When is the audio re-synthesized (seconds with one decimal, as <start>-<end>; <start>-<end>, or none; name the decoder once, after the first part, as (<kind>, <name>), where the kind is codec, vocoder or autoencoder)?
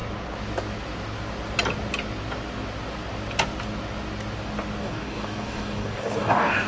4.8-6.7 (codec, DAC)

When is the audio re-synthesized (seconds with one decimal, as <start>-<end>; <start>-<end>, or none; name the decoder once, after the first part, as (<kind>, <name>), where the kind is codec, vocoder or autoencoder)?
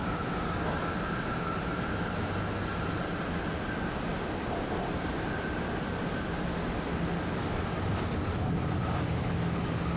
none